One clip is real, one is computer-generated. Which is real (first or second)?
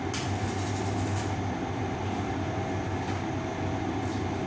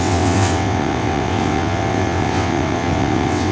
first